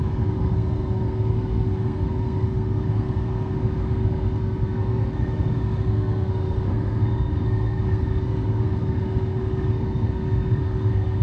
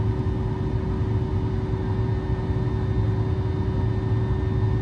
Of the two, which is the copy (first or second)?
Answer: first